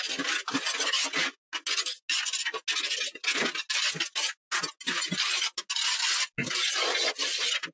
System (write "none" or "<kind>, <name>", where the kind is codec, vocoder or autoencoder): none